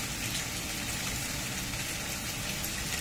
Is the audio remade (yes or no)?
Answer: no